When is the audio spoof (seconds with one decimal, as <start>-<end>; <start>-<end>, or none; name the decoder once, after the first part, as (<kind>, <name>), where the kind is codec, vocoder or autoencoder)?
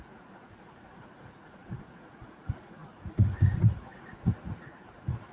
0.0-5.3 (vocoder, Vocos)